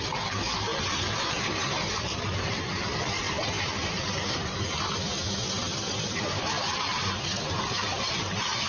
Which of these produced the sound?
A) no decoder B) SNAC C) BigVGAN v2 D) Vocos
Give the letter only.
C